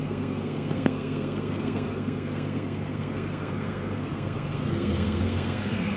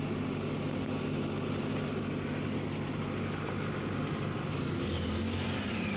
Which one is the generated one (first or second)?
first